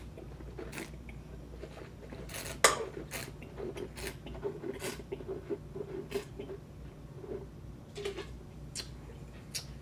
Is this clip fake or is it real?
real